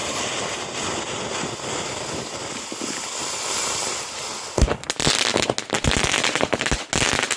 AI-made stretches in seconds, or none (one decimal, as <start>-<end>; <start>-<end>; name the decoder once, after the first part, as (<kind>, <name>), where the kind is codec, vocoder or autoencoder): none